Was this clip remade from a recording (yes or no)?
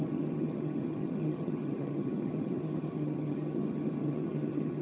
yes